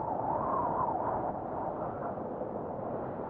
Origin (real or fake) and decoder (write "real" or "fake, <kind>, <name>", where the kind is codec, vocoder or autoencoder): real